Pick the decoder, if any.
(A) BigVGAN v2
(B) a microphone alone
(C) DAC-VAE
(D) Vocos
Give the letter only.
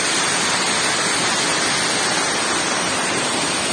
B